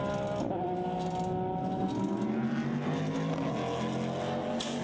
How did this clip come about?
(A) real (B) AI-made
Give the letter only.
A